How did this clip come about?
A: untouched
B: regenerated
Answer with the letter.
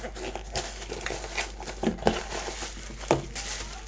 A